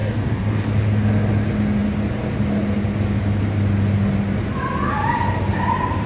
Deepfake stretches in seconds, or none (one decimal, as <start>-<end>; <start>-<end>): 0.0-0.7